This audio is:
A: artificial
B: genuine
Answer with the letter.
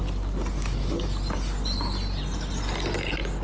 B